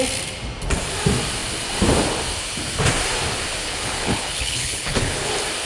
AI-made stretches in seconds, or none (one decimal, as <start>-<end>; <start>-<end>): 3.6-5.3